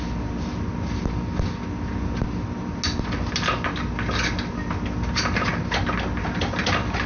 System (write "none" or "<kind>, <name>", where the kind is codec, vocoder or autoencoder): none